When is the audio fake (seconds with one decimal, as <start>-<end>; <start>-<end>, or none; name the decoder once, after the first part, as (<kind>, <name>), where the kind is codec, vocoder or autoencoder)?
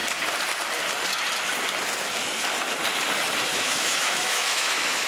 3.5-5.1 (autoencoder, DAC-VAE)